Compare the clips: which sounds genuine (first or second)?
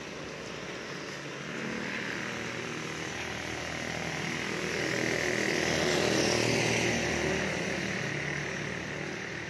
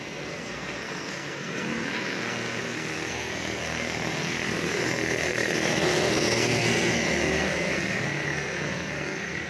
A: first